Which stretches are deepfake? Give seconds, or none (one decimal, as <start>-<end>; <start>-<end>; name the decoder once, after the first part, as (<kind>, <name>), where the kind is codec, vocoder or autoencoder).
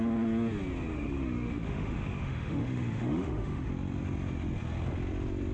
0.9-3.7 (autoencoder, DAC-VAE)